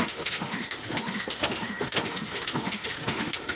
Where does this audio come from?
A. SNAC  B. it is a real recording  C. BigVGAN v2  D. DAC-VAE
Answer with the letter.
D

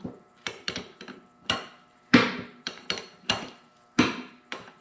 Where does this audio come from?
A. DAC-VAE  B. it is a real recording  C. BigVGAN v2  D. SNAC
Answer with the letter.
C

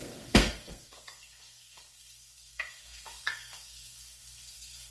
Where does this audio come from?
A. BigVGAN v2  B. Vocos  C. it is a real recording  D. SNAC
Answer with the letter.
D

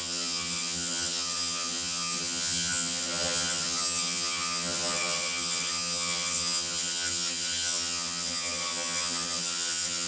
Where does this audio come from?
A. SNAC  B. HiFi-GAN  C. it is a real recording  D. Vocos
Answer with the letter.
B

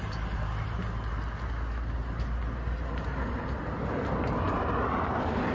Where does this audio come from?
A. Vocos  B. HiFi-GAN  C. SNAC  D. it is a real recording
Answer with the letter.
D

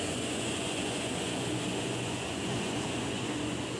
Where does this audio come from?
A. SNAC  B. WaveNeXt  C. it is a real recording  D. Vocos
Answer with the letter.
D